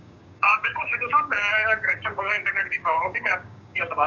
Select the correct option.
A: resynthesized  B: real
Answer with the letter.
A